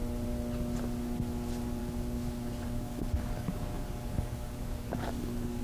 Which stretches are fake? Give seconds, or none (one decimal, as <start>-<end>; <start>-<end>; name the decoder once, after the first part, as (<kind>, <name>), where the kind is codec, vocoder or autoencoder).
1.8-5.6 (codec, DAC)